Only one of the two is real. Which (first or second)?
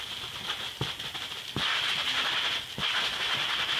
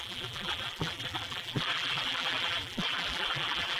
first